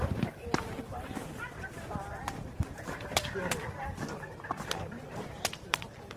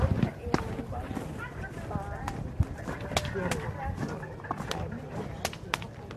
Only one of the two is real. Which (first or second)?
second